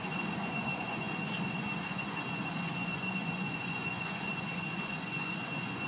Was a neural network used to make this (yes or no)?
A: yes